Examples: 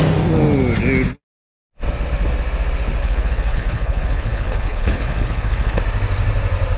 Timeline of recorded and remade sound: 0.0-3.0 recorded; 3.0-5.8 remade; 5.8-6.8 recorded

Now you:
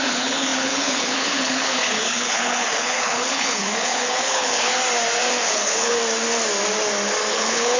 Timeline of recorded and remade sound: 0.0-4.7 remade; 4.7-5.3 recorded; 5.3-6.0 remade; 6.0-7.3 recorded; 7.3-7.8 remade

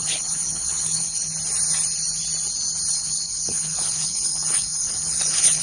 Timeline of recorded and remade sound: 0.0-1.2 remade; 1.2-2.9 recorded; 2.9-5.6 remade

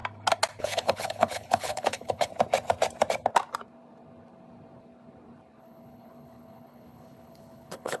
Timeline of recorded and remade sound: 0.0-0.6 recorded; 0.6-2.3 remade; 2.3-5.6 recorded; 5.6-8.0 remade

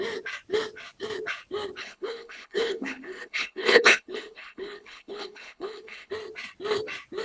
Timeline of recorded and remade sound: 0.0-1.8 recorded; 1.8-6.1 remade; 6.1-7.2 recorded

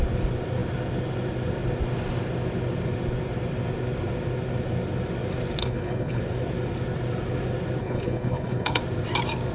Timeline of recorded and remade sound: 0.0-5.6 recorded; 5.6-6.2 remade; 6.2-7.8 recorded; 7.8-8.8 remade; 8.8-9.5 recorded

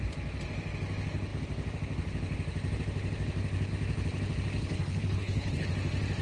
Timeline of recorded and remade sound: 0.0-4.6 recorded; 4.6-5.7 remade; 5.7-6.2 recorded